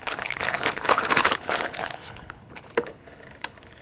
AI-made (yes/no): yes